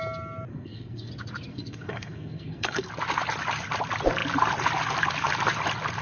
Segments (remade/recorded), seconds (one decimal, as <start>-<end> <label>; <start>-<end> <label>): 0.0-0.5 recorded; 0.5-1.1 remade; 1.1-1.5 recorded; 1.5-2.9 remade; 2.9-6.0 recorded